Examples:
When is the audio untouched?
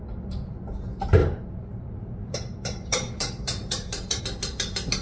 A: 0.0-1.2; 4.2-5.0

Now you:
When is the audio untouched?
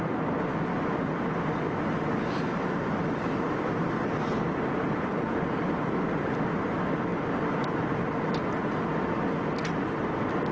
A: 0.0-10.5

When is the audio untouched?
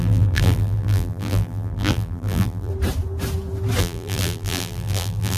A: 2.7-3.8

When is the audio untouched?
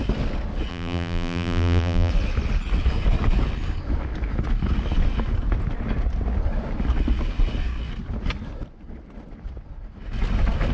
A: 0.0-0.7; 2.1-10.7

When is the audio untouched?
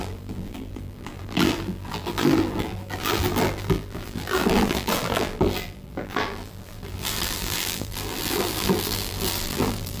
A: none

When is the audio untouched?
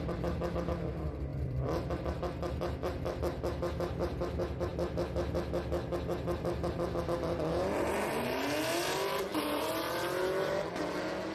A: 0.0-1.3; 3.2-9.3; 10.2-11.3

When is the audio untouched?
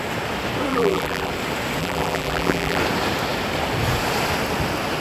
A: 0.0-0.7; 1.3-1.8; 2.8-5.0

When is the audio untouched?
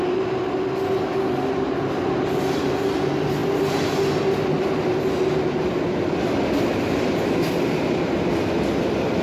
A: 0.0-9.2